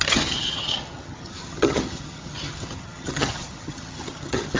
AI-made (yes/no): yes